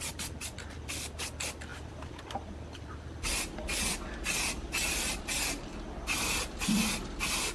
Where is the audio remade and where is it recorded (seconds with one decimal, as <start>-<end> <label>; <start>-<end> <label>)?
0.0-7.5 recorded